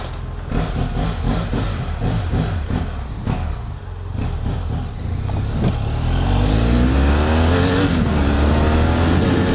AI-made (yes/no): no